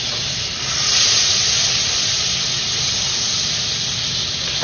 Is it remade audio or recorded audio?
recorded